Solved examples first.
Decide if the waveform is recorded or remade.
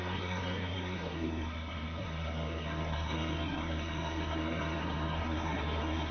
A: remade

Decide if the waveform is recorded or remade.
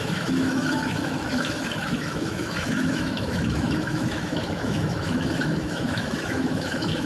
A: remade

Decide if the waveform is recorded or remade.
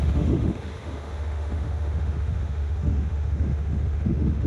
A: remade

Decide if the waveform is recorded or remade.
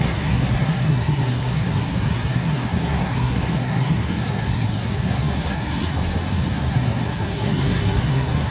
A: remade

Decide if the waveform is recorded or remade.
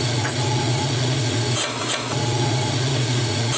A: remade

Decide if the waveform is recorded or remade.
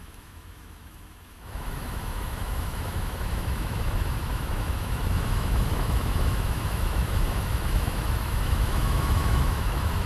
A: remade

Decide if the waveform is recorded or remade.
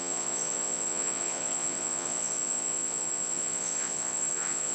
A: remade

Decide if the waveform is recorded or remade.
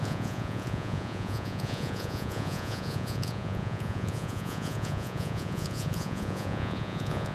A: remade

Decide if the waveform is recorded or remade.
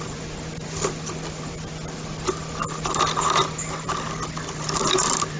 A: recorded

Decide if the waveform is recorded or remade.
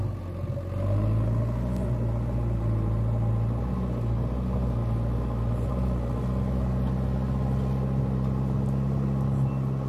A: recorded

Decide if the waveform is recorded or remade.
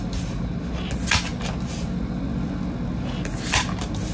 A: recorded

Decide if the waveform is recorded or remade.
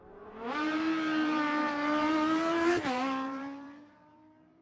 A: remade